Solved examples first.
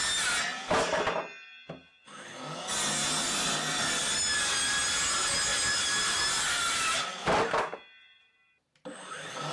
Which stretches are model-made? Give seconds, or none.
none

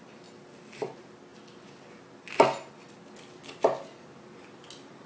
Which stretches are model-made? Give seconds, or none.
none

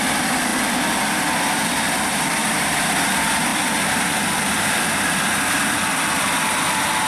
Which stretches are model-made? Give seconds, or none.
0.0-7.1 (vocoder, BigVGAN v2)